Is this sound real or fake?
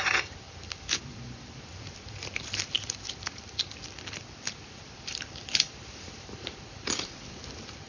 fake